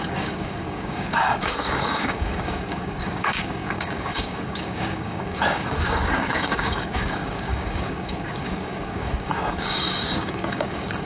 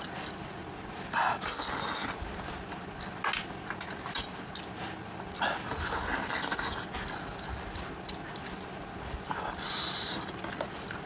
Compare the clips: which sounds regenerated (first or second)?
first